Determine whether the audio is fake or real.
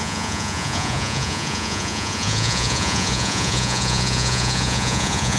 fake